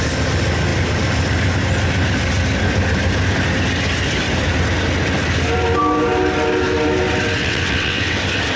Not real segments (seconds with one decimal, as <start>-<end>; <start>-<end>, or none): 7.4-8.2